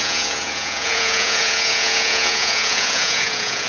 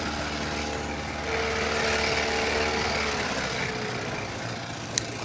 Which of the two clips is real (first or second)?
second